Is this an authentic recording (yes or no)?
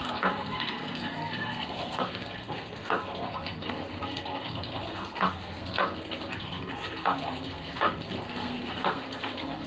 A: no